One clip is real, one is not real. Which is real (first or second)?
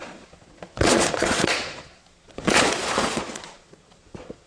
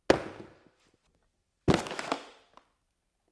second